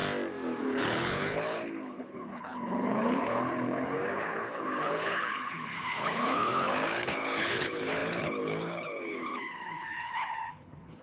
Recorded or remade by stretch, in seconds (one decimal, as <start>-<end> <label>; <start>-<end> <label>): 0.0-0.6 recorded; 0.6-11.0 remade

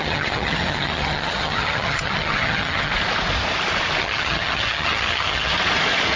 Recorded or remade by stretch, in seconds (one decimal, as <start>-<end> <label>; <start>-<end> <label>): 0.0-2.9 remade; 2.9-4.0 recorded; 4.0-5.5 remade; 5.5-6.2 recorded

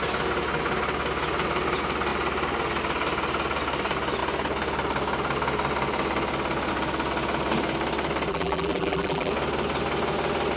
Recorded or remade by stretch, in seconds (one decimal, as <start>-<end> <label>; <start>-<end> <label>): 0.0-8.3 recorded; 8.3-9.3 remade; 9.3-10.6 recorded

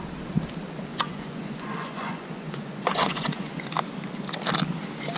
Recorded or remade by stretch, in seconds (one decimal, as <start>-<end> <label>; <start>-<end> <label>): 0.0-0.9 recorded; 0.9-3.5 remade; 3.5-5.2 recorded